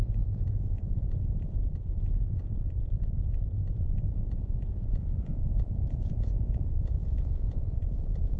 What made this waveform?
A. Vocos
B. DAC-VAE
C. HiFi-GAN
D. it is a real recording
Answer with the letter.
A